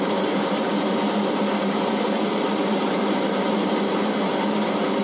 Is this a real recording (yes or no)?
no